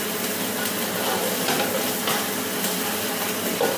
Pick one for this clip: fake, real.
real